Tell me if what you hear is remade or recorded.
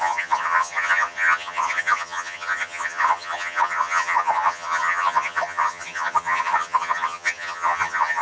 remade